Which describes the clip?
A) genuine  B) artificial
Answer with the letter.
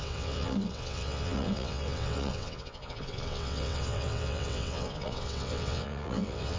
B